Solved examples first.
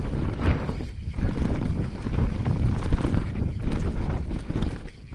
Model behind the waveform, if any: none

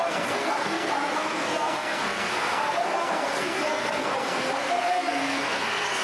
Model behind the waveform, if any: codec, SNAC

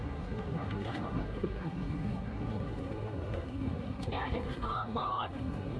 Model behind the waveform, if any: codec, SNAC